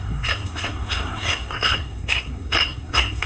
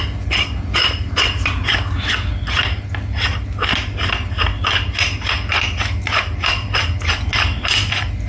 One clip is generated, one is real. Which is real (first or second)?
second